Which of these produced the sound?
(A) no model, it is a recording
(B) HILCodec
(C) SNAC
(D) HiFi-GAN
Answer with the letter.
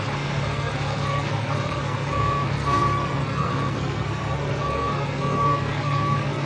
C